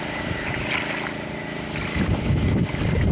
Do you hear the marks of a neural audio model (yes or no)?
no